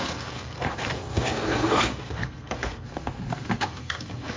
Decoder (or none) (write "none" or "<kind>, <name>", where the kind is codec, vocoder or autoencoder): codec, SNAC